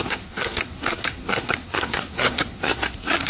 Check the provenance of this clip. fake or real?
fake